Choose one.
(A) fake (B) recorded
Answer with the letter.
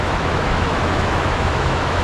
A